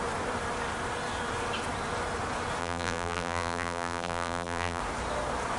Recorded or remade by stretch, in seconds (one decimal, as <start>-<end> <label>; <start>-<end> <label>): 0.0-2.6 recorded; 2.6-4.8 remade; 4.8-5.6 recorded